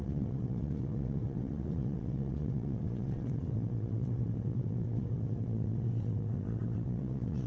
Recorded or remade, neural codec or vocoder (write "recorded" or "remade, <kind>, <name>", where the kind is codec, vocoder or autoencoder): remade, vocoder, WaveNeXt